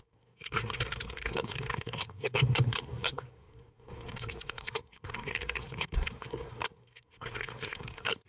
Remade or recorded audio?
remade